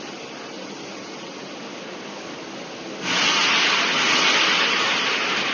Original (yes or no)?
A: yes